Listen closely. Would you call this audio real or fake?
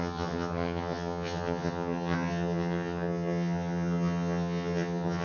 fake